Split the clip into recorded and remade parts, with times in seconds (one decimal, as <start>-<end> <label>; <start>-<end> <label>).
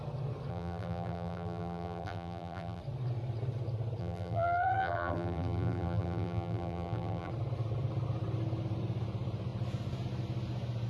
0.0-0.5 recorded; 0.5-2.8 remade; 2.8-4.0 recorded; 4.0-7.3 remade; 7.3-10.9 recorded